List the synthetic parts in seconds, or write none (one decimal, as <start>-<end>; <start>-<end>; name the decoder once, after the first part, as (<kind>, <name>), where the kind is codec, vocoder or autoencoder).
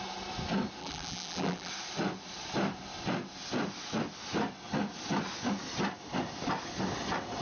0.8-1.7 (vocoder, BigVGAN v2)